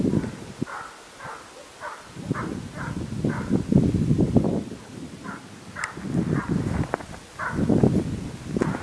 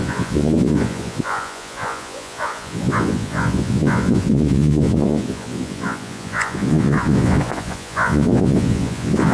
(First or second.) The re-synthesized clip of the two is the second